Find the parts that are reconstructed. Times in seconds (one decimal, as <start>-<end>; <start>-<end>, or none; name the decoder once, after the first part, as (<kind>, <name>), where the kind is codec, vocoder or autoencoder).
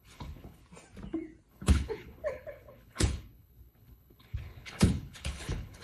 0.0-0.6 (codec, HILCodec); 1.5-5.8